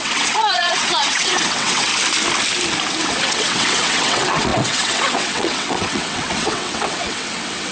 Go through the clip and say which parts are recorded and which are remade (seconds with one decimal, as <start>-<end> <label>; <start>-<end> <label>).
0.0-1.9 remade; 1.9-3.0 recorded; 3.0-7.7 remade